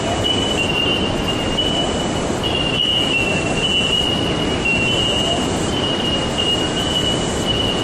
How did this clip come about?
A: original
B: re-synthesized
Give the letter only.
A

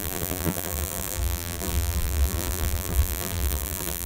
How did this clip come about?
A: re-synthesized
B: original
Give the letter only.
A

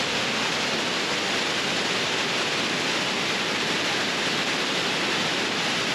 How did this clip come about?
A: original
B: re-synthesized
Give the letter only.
A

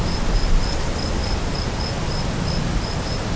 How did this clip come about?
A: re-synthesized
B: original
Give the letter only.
B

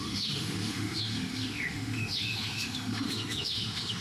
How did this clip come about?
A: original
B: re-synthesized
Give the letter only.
B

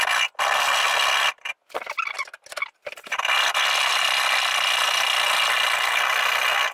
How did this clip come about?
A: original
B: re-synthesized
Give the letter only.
A